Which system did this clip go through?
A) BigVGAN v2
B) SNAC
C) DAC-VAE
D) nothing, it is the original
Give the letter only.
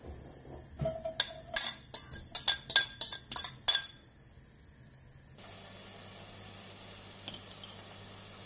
D